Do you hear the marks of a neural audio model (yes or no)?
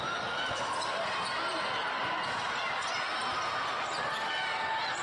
no